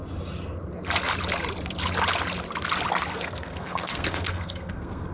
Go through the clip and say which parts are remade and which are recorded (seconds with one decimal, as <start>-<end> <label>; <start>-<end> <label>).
0.0-3.1 recorded; 3.1-5.1 remade